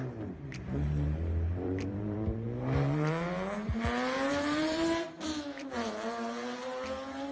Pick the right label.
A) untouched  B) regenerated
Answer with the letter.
B